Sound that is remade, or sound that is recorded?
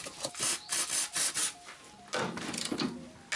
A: recorded